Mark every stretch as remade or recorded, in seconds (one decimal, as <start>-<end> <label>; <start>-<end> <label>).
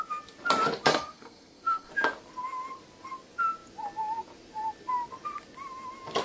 0.0-0.9 recorded; 0.9-1.9 remade; 1.9-6.2 recorded